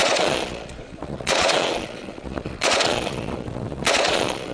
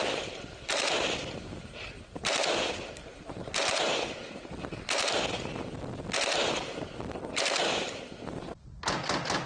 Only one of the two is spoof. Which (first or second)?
first